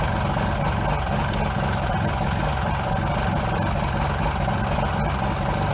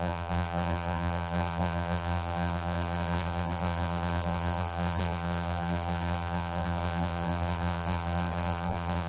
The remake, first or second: second